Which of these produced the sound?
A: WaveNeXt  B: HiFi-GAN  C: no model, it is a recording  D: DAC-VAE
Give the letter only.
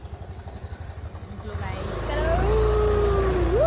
C